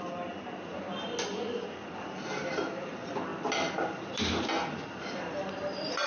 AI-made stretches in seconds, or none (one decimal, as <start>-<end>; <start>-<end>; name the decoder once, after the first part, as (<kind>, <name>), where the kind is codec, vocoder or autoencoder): none